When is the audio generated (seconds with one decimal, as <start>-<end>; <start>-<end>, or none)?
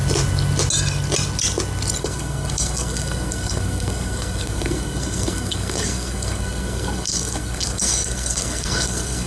2.0-9.3